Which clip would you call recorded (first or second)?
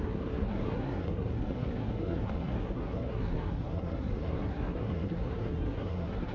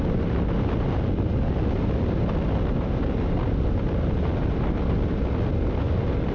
second